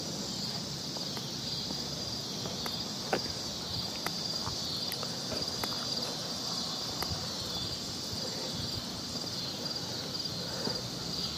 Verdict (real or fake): real